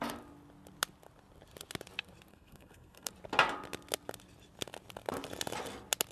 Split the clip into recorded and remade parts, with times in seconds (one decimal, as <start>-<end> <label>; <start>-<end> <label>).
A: 0.0-2.3 recorded; 2.3-3.1 remade; 3.1-6.1 recorded